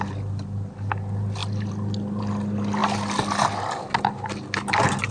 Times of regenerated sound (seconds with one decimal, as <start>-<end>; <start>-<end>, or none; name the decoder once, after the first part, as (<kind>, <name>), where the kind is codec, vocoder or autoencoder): none